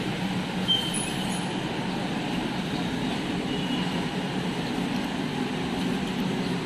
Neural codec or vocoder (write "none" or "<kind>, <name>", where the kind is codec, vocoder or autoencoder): none